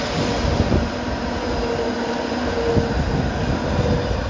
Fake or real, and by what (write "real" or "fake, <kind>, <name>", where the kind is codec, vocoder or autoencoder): real